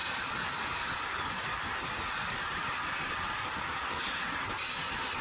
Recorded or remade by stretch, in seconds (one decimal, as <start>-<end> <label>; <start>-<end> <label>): 0.0-5.2 recorded